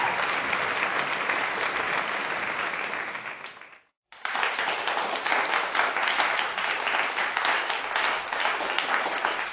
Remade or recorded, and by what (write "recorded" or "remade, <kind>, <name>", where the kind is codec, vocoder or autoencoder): recorded